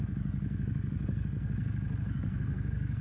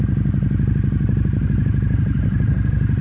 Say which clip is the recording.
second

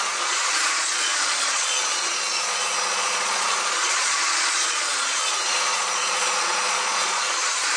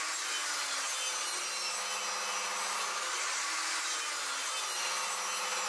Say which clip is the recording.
second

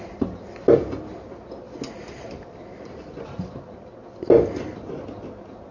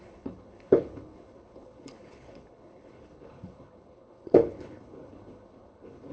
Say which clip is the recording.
first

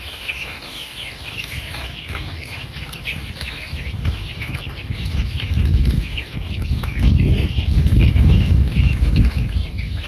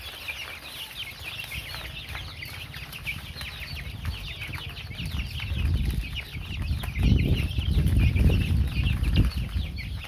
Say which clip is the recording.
second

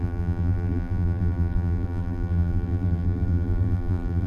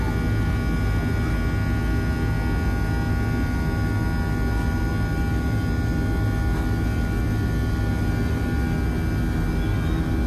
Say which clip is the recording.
second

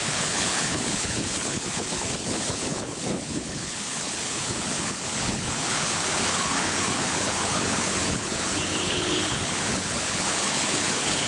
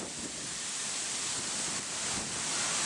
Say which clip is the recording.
second